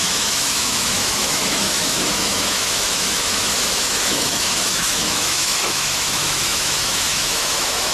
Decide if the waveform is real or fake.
fake